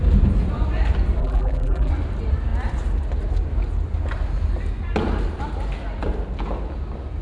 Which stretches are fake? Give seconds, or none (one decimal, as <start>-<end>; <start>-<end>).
1.2-1.9